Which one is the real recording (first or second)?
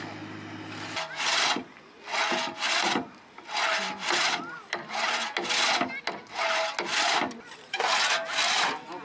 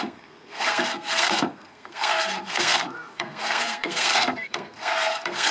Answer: first